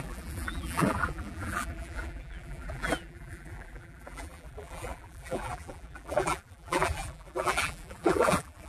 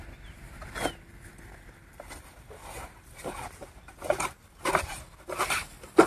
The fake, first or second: first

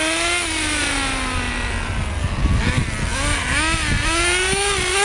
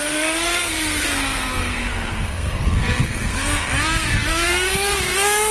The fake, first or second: second